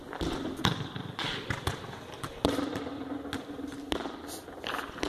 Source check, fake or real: real